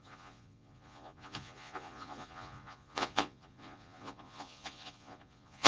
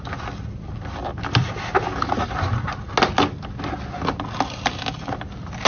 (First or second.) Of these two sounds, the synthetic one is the first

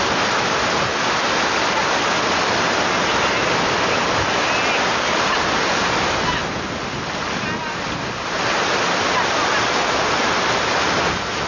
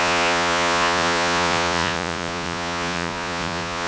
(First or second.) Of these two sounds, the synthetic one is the second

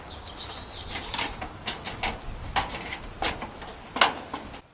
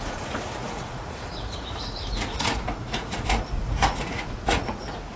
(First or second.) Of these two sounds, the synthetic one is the second